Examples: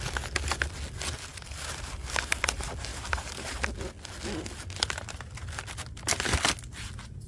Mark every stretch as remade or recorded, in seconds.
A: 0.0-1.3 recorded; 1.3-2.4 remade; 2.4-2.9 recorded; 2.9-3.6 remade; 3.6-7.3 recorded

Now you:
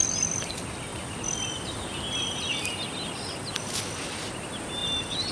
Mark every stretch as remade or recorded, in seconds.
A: 0.0-5.3 recorded

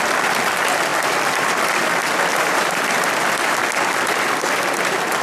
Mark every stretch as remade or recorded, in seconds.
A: 0.0-2.3 recorded; 2.3-2.8 remade; 2.8-5.2 recorded

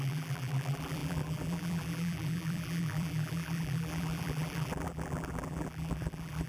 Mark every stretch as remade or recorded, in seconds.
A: 0.0-6.5 remade

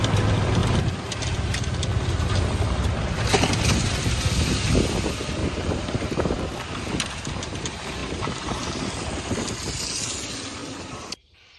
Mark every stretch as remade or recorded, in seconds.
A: 0.0-5.4 recorded; 5.4-6.3 remade; 6.3-10.6 recorded; 10.6-11.6 remade

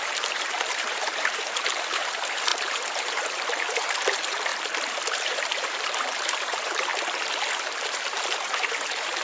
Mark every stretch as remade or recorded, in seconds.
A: 0.0-4.5 remade; 4.5-5.1 recorded; 5.1-6.9 remade; 6.9-7.9 recorded; 7.9-9.2 remade